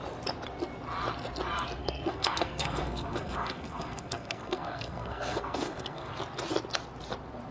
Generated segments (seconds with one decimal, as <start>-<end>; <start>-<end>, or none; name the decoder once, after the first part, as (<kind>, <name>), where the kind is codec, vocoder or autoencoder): 1.8-6.1 (codec, SNAC)